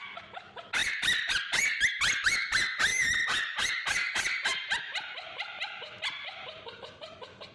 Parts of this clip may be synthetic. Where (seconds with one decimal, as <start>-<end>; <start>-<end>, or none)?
none